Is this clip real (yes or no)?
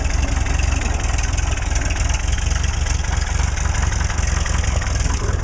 yes